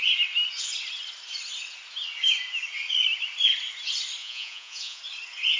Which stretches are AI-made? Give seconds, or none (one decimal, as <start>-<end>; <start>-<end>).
4.2-5.0